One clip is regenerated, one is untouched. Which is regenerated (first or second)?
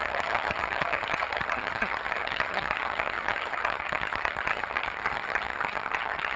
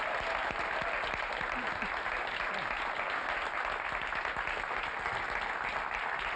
first